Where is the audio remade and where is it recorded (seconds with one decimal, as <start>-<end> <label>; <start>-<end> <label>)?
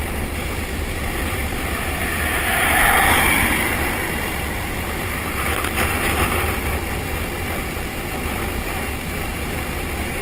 0.0-9.3 recorded; 9.3-10.2 remade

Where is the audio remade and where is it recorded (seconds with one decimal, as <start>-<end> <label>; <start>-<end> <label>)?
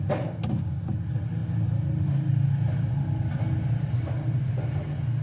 0.0-5.2 recorded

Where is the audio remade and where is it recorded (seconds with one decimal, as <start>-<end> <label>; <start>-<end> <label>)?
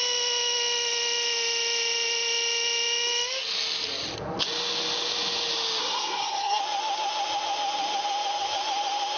0.0-5.8 recorded; 5.8-6.6 remade; 6.6-9.2 recorded